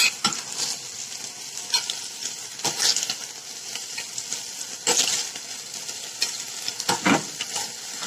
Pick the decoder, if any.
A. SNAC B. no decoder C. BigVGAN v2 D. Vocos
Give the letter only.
B